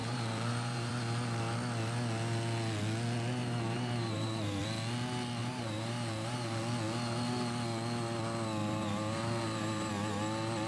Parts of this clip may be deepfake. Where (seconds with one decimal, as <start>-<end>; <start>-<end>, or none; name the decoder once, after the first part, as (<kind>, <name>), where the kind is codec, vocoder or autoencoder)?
0.0-0.9 (vocoder, BigVGAN v2); 3.4-4.6; 5.4-6.6; 8.6-9.9